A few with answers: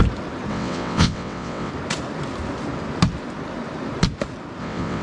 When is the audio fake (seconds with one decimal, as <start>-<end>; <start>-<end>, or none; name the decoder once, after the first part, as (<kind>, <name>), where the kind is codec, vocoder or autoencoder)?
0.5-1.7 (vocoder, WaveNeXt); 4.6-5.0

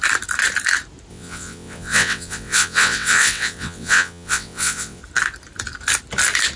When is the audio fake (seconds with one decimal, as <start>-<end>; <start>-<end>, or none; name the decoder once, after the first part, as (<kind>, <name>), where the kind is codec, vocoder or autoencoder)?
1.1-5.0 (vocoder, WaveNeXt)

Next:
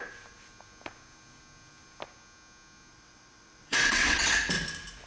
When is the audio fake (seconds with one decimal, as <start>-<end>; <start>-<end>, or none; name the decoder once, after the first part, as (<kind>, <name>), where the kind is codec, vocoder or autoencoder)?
2.9-4.3 (vocoder, WaveNeXt)

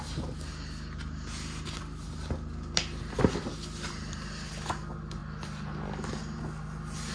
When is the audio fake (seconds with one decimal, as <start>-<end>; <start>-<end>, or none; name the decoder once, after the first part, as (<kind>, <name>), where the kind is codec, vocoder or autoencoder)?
none